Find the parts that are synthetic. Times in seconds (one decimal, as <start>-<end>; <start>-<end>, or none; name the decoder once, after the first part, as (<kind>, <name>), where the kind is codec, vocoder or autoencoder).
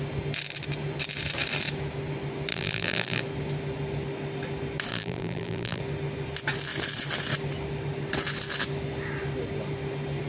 2.5-3.2 (vocoder, BigVGAN v2); 4.9-5.8